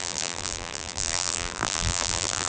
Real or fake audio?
fake